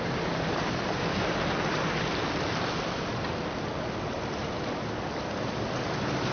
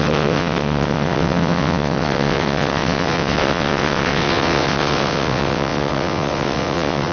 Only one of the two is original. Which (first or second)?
first